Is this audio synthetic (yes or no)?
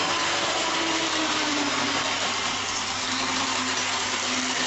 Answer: no